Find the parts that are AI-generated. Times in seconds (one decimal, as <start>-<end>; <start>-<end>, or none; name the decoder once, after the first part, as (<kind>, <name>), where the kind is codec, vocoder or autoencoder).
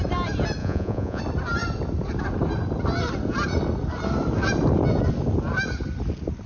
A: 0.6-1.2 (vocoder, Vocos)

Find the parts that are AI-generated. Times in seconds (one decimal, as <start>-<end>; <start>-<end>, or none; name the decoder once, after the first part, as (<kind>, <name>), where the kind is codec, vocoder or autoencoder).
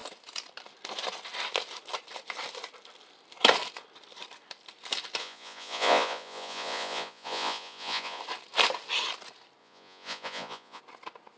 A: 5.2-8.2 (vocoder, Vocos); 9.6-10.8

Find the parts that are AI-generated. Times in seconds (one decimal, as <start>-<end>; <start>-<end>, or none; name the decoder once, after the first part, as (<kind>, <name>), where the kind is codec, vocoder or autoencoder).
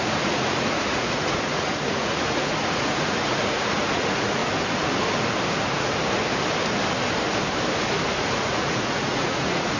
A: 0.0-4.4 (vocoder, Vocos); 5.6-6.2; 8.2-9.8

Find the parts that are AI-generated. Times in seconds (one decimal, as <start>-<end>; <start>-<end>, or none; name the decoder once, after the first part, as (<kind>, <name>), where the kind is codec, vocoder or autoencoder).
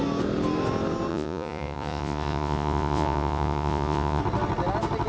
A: 1.1-4.2 (vocoder, Vocos)